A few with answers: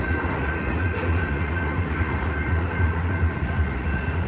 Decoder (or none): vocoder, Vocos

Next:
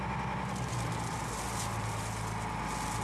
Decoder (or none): none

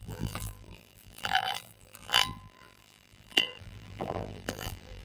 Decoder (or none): vocoder, BigVGAN v2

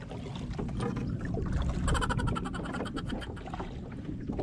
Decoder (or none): none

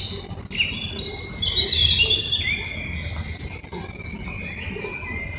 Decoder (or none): none